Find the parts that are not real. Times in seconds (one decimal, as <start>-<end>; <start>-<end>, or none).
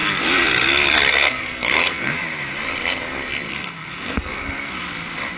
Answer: 1.1-2.1; 3.5-4.7